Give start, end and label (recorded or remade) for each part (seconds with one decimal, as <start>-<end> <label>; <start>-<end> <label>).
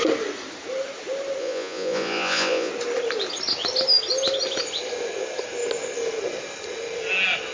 0.0-1.4 recorded; 1.4-2.7 remade; 2.7-7.5 recorded